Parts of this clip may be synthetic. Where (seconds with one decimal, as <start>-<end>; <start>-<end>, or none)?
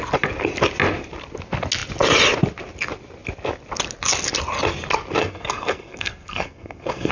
5.2-7.1